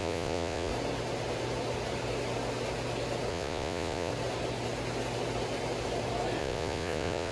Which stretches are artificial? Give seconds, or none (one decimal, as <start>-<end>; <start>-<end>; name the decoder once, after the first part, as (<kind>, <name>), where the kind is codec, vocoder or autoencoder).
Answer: 0.0-0.7 (vocoder, Vocos); 3.3-4.1; 6.4-7.3

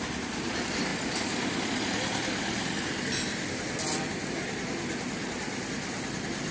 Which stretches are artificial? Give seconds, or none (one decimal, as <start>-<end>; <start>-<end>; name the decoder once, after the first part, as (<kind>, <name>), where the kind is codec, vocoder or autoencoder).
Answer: none

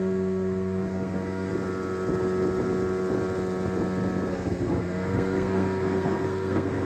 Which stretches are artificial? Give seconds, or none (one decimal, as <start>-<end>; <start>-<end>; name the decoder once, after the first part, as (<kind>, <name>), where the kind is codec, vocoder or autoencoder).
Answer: 0.0-1.5 (codec, SNAC); 4.3-6.8

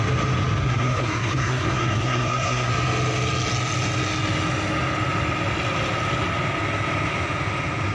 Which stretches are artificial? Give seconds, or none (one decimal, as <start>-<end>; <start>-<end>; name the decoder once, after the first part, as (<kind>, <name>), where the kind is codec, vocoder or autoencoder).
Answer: 0.6-2.7 (codec, SNAC)

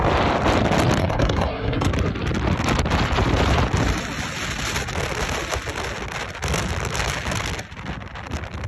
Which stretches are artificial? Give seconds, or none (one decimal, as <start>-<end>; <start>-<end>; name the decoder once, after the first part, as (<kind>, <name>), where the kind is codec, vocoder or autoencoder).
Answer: 1.0-1.9 (codec, SNAC)

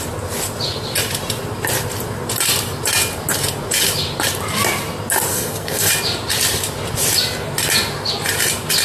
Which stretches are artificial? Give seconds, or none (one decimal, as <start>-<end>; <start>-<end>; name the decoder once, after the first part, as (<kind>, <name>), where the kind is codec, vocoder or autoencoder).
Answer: 5.3-5.9 (codec, SNAC)

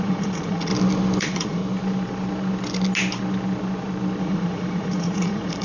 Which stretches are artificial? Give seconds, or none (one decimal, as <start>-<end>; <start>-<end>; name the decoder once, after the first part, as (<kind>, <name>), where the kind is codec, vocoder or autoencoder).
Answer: 0.0-0.7 (vocoder, Vocos); 1.2-1.6; 4.2-5.6